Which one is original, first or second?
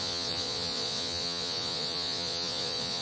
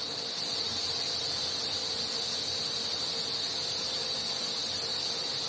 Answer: second